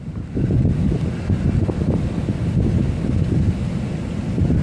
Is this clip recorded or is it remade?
recorded